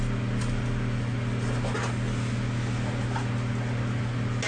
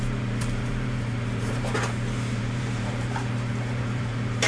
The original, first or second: first